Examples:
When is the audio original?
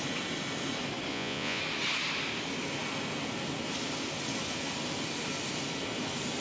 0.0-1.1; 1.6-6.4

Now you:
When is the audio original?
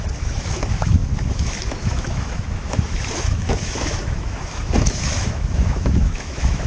none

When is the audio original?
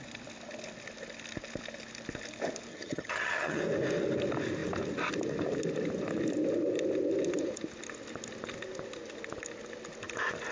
0.0-2.7; 3.6-10.5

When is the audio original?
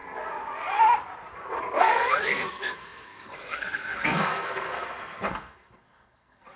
0.0-1.8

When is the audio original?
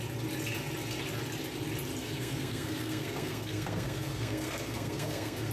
0.0-2.0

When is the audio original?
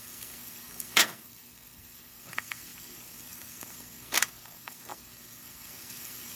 none